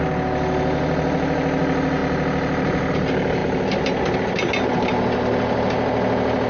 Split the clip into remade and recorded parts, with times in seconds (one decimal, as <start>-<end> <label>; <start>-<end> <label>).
0.0-6.5 recorded